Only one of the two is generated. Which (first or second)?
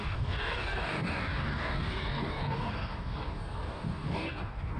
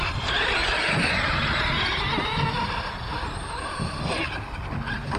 first